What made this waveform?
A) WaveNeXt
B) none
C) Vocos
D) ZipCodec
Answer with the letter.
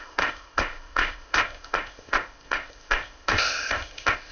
D